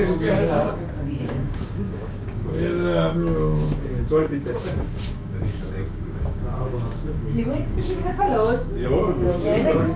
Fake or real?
fake